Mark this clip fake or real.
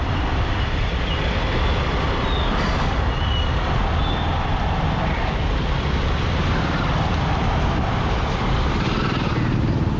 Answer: real